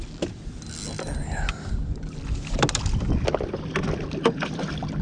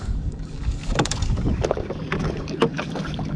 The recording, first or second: first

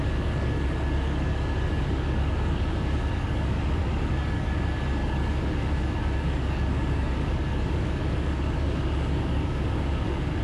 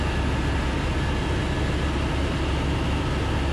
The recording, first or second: second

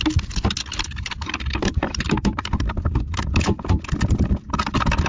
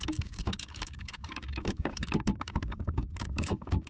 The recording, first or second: first